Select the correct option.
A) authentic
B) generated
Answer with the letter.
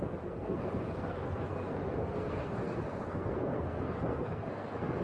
B